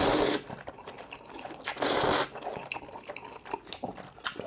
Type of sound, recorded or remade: recorded